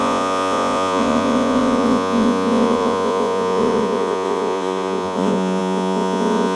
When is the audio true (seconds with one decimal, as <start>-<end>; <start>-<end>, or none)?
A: none

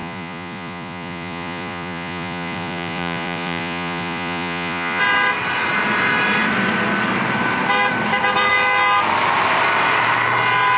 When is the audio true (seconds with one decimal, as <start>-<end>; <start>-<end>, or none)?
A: 5.0-10.8

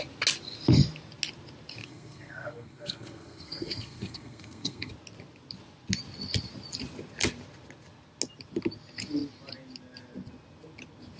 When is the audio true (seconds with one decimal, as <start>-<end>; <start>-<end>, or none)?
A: 0.0-1.8; 4.9-11.2

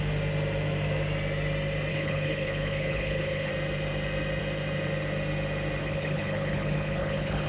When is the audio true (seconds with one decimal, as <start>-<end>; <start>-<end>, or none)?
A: 0.0-1.9; 3.5-5.8

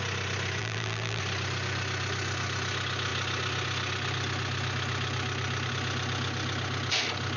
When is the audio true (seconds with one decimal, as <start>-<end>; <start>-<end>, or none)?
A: 0.0-0.6; 1.2-7.4

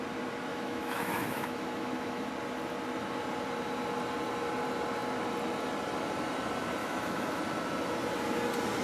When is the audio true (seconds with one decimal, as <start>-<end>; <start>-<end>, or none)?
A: 0.0-0.5; 2.3-6.8; 7.4-8.8

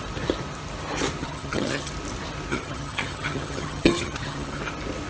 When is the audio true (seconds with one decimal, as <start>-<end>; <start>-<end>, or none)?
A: 0.0-1.2; 1.9-2.5; 4.6-5.1